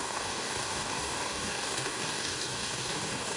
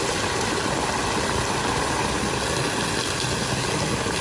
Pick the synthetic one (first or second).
first